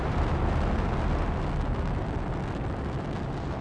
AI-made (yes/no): no